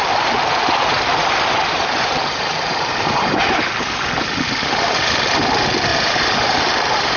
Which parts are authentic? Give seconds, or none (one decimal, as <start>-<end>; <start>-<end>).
0.0-1.2; 4.0-5.9